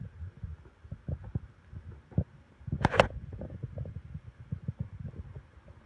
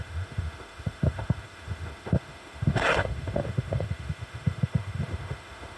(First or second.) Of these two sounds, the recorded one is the first